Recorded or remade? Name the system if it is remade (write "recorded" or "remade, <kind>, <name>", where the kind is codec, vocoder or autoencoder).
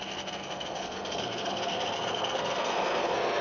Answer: remade, codec, SNAC